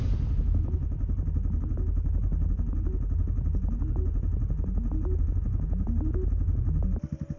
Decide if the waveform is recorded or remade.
recorded